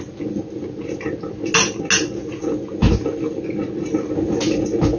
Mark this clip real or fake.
real